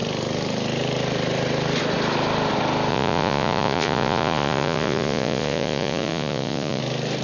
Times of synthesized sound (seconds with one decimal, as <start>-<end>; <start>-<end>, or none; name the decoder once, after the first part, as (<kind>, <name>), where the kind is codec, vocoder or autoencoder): 2.9-6.8 (vocoder, Vocos)